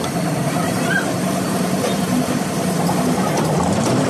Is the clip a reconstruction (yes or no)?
yes